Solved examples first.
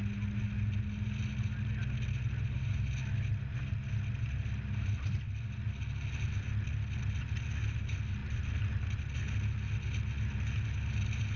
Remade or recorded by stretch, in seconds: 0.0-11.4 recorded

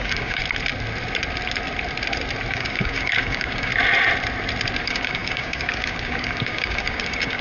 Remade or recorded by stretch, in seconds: 0.0-0.4 remade; 0.4-2.5 recorded; 2.5-3.7 remade; 3.7-4.8 recorded; 4.8-7.4 remade

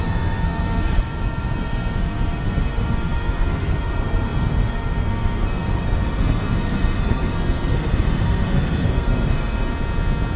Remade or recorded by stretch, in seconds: 0.0-9.7 remade; 9.7-10.4 recorded

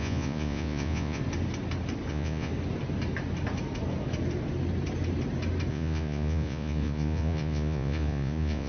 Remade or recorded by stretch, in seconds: 0.0-1.2 remade; 1.2-2.1 recorded; 2.1-2.5 remade; 2.5-5.7 recorded; 5.7-8.7 remade